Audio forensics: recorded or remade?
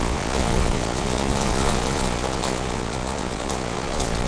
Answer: remade